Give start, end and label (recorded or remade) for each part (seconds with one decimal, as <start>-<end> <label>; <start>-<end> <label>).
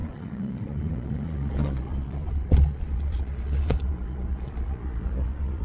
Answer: 0.0-5.6 remade